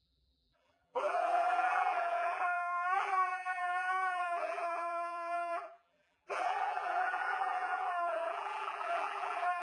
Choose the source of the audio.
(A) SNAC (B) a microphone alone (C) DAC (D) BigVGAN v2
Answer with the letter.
D